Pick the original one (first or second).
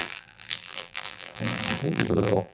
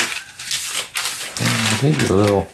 second